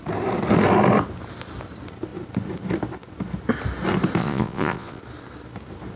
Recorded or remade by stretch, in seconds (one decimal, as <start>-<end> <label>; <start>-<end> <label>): 0.0-4.2 recorded; 4.2-5.0 remade; 5.0-6.0 recorded